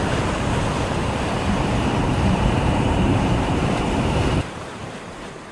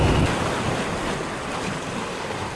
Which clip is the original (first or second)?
second